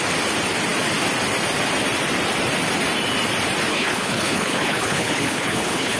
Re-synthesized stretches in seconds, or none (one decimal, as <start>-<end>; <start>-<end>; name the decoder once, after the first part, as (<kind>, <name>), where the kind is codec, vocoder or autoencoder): 3.7-6.0 (codec, HILCodec)